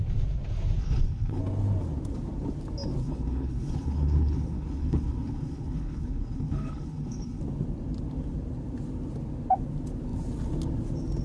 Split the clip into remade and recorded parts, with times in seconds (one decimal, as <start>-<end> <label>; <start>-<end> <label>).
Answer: 0.0-0.8 recorded; 0.8-1.4 remade; 1.4-3.0 recorded; 3.0-7.4 remade; 7.4-11.2 recorded